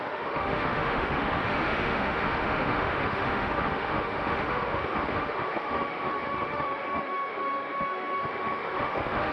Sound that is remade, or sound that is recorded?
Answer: remade